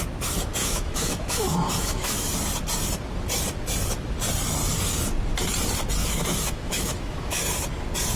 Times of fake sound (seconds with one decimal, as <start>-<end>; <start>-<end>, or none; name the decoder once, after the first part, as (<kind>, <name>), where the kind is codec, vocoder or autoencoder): 0.6-2.3 (autoencoder, DAC-VAE); 6.0-7.4